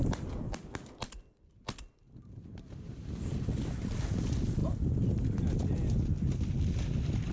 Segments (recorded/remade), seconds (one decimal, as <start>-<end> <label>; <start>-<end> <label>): 0.0-7.3 recorded